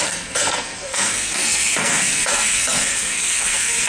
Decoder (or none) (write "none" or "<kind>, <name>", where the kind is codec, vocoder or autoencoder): codec, SNAC